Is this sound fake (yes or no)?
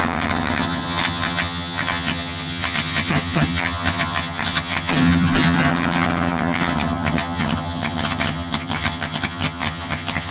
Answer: yes